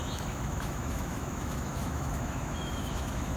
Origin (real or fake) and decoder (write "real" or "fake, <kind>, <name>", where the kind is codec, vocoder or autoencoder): fake, autoencoder, DAC-VAE